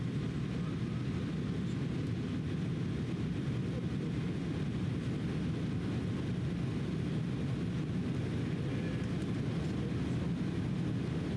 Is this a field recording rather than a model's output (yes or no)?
yes